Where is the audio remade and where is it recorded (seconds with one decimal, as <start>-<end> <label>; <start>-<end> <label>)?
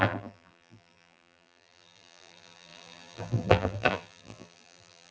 0.0-5.1 remade